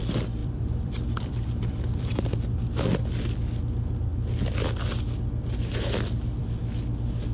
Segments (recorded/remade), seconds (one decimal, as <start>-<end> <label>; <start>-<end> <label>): 0.0-0.4 recorded; 0.4-2.1 remade; 2.1-7.3 recorded